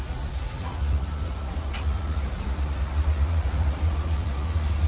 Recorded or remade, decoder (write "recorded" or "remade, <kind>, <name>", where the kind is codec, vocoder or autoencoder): remade, vocoder, Vocos